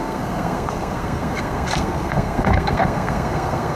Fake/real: fake